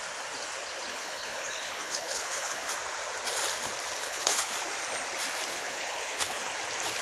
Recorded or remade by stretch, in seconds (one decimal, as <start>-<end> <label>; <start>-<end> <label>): 0.0-0.9 recorded; 0.9-2.7 remade; 2.7-4.0 recorded; 4.0-4.5 remade; 4.5-5.5 recorded; 5.5-6.5 remade; 6.5-7.0 recorded